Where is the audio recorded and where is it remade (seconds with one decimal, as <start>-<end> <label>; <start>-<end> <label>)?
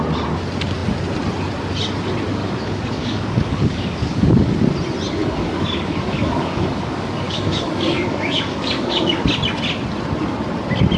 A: 0.0-2.4 recorded; 2.4-4.5 remade; 4.5-5.2 recorded; 5.2-9.2 remade; 9.2-11.0 recorded